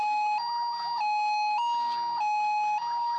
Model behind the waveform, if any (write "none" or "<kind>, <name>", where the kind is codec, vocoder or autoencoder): none